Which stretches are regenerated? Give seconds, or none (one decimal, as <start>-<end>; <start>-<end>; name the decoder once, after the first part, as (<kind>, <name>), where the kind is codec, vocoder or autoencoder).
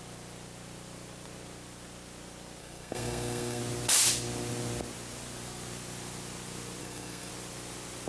2.6-3.6 (codec, SNAC); 6.8-7.3